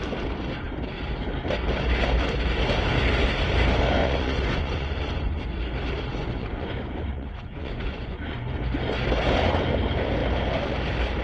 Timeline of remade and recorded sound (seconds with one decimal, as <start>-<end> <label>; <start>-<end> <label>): 0.0-4.0 recorded; 4.0-5.4 remade; 5.4-6.1 recorded; 6.1-8.6 remade; 8.6-11.2 recorded